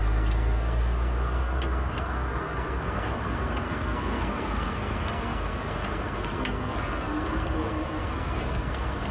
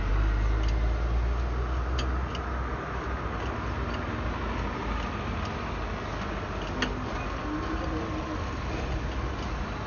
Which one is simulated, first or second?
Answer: first